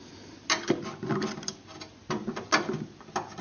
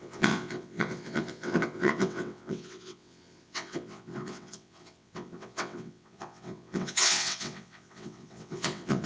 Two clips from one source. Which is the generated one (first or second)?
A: second